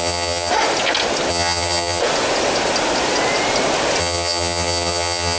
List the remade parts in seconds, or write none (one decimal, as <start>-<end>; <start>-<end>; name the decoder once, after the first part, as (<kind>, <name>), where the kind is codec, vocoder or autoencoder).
0.0-0.5 (vocoder, HiFi-GAN); 1.3-2.0; 4.0-5.4